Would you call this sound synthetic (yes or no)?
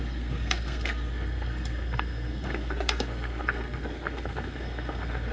yes